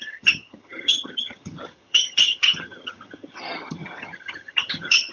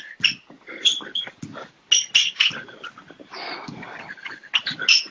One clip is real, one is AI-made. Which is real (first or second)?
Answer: second